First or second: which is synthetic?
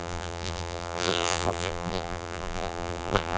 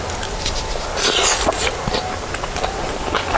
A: first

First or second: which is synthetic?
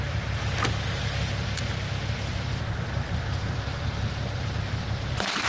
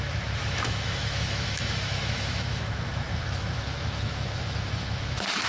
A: second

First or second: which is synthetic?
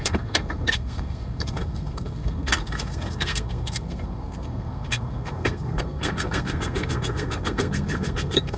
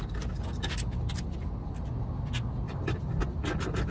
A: first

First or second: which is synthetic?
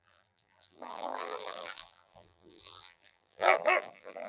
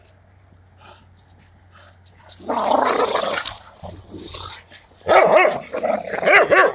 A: first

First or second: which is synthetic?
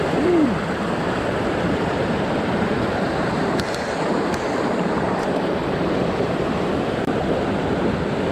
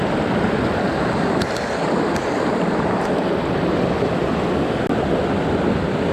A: first